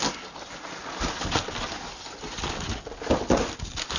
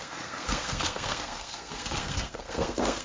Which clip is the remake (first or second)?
second